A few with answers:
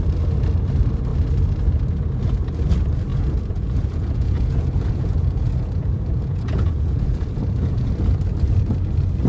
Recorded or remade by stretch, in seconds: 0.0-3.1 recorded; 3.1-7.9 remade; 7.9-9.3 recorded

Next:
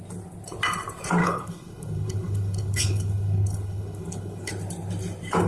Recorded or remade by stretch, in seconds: 0.0-1.2 recorded; 1.2-4.5 remade; 4.5-5.5 recorded

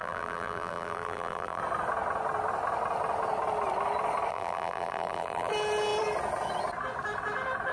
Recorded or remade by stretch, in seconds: 0.0-1.6 remade; 1.6-4.3 recorded; 4.3-5.5 remade; 5.5-7.7 recorded